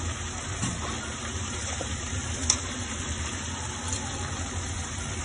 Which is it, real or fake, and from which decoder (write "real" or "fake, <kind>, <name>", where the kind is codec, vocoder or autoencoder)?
fake, vocoder, BigVGAN v2